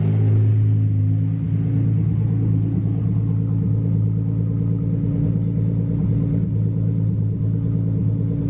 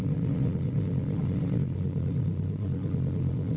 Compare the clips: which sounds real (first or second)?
first